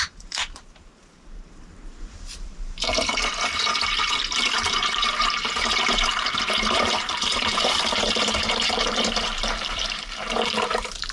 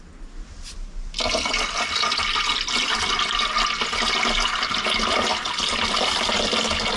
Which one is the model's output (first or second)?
first